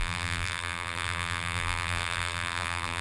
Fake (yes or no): yes